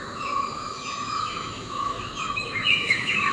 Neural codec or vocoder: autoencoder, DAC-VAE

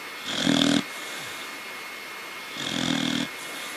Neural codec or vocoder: none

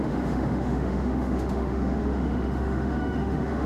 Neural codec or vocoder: autoencoder, DAC-VAE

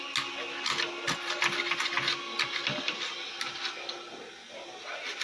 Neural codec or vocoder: none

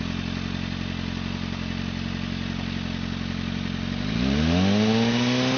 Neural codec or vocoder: none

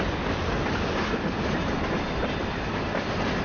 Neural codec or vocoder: none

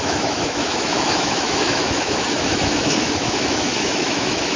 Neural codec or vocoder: autoencoder, DAC-VAE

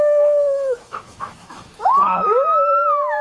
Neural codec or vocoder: autoencoder, DAC-VAE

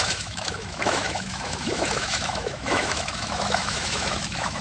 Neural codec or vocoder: autoencoder, DAC-VAE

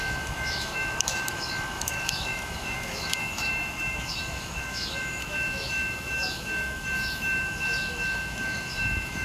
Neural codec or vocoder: autoencoder, DAC-VAE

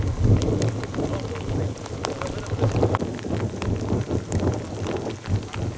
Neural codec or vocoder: none